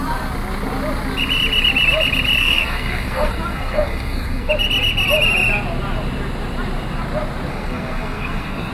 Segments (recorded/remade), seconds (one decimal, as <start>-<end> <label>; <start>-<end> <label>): 0.0-2.4 recorded; 2.4-4.5 remade; 4.5-7.5 recorded; 7.5-8.7 remade